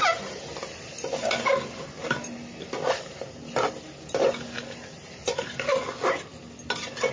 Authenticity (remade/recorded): recorded